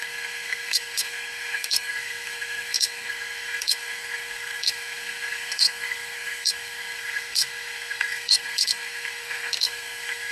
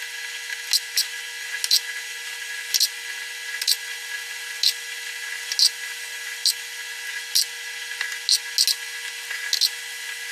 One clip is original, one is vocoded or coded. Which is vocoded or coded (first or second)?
first